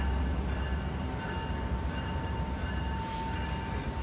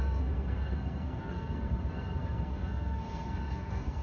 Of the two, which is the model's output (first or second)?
second